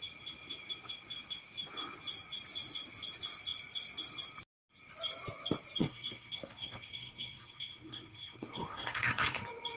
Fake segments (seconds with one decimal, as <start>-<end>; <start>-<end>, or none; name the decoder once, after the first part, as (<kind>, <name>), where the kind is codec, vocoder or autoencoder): 5.8-9.4 (codec, SNAC)